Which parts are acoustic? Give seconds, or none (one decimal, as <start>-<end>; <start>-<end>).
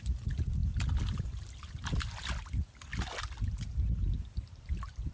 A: 0.0-5.1